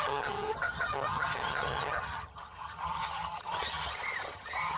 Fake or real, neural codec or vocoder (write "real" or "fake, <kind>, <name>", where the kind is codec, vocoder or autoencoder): fake, vocoder, HiFi-GAN